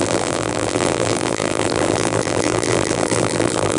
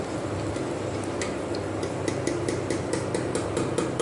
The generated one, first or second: first